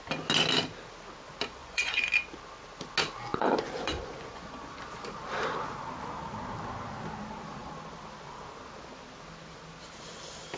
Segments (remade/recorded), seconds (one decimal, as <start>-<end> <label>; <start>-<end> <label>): 0.0-1.6 recorded; 1.6-2.1 remade; 2.1-3.3 recorded; 3.3-4.7 remade; 4.7-10.6 recorded

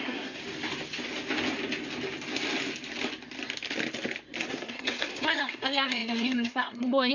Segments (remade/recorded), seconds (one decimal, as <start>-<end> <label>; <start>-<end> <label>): 0.0-0.4 remade; 0.4-4.5 recorded; 4.5-7.1 remade

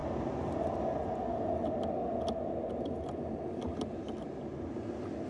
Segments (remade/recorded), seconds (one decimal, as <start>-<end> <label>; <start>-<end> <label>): 0.0-5.3 recorded

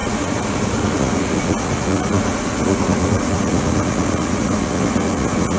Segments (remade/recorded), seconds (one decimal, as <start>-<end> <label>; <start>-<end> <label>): 0.0-5.6 remade

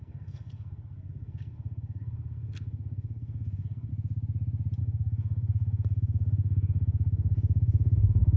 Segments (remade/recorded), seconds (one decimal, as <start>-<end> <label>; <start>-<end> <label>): 0.0-3.9 remade; 3.9-4.8 recorded; 4.8-8.4 remade

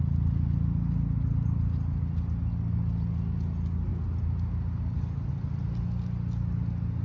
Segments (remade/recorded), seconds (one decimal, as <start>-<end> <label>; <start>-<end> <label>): 0.0-7.0 recorded